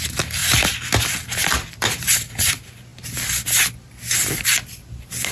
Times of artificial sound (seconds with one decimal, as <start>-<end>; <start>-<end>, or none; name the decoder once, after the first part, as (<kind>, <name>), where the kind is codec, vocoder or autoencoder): 0.4-2.5 (vocoder, BigVGAN v2)